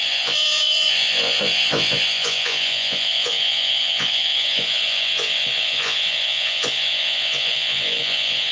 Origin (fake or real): fake